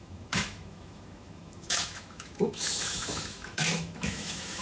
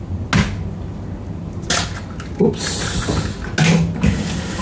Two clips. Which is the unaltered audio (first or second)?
second